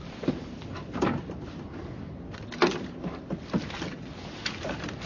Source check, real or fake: real